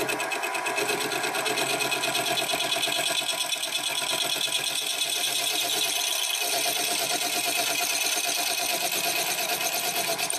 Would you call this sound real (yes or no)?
yes